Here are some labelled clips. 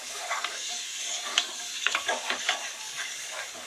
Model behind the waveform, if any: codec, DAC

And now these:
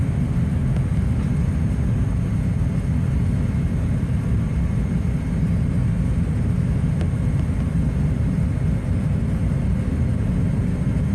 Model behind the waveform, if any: none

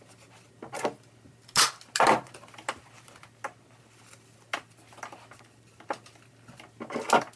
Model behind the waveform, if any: none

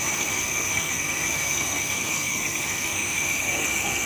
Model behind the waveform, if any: codec, SNAC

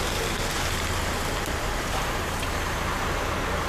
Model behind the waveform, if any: vocoder, BigVGAN v2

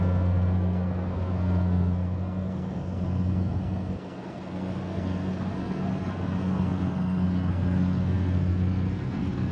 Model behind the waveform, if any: codec, SNAC